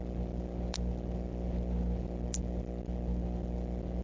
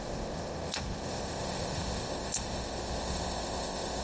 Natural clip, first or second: first